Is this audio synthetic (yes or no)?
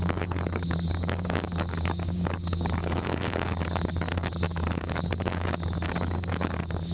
yes